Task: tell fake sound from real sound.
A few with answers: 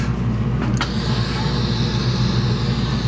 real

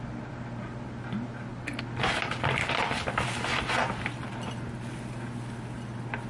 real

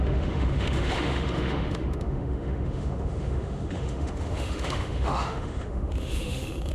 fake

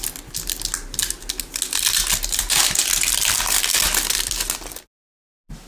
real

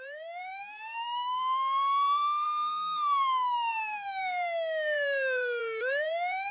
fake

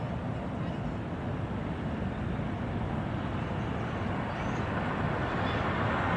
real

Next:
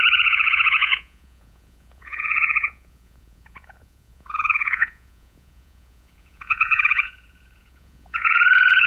fake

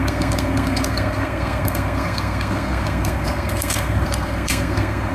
fake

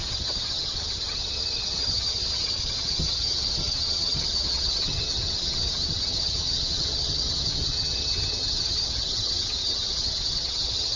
fake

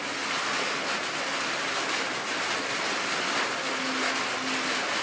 real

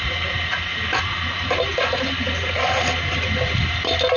real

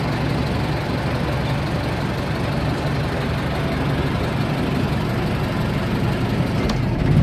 real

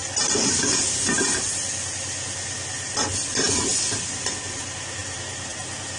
real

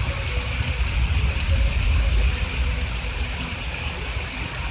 real